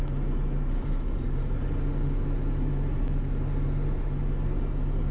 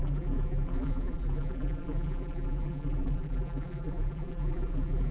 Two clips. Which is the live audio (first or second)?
first